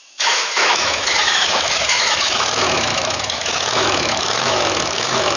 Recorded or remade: remade